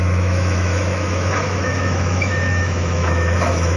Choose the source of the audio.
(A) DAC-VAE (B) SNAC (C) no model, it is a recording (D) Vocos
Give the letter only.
A